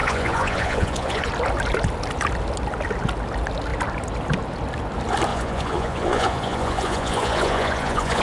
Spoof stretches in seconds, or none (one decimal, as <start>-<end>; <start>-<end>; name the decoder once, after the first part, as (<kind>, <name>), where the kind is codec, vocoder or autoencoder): 0.0-1.3 (vocoder, Vocos); 5.3-8.2